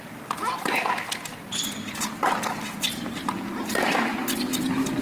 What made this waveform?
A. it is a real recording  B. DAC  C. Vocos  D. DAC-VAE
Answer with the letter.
A